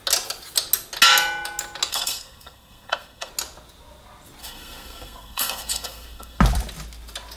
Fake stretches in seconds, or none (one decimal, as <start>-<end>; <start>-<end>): 1.9-3.3; 4.4-6.4